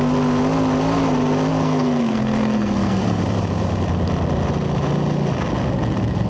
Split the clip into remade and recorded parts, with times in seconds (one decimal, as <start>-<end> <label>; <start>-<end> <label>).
0.0-1.5 recorded; 1.5-3.2 remade; 3.2-6.3 recorded